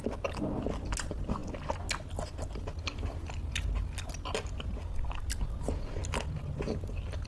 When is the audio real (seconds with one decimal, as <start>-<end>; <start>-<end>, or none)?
0.0-7.3